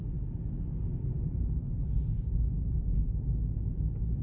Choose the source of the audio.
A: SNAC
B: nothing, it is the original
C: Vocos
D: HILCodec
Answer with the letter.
B